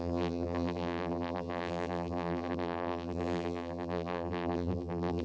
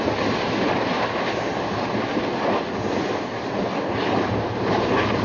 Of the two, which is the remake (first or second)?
first